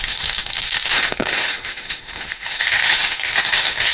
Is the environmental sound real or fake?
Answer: fake